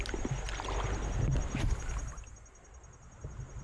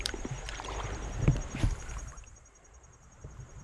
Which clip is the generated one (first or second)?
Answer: second